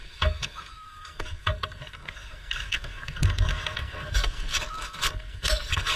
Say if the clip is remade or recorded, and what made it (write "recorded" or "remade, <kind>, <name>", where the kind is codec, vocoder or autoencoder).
remade, codec, SNAC